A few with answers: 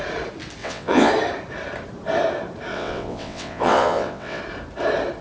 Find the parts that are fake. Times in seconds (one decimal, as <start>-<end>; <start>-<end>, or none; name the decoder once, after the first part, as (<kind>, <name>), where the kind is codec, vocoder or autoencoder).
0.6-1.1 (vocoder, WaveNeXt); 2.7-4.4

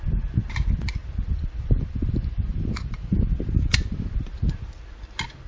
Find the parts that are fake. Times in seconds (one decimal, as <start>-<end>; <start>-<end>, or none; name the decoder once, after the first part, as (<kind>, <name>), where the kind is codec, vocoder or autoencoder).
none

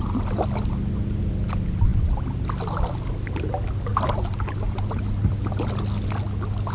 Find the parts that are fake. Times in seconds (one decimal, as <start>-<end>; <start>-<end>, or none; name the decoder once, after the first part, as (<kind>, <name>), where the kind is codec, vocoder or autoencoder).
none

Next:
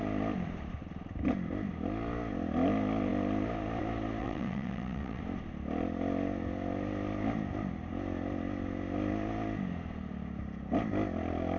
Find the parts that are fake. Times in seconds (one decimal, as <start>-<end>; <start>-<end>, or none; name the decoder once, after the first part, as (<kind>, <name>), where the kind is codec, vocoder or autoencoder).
4.2-5.2 (vocoder, WaveNeXt)